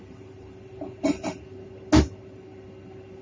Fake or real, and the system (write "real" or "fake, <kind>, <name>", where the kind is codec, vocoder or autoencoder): real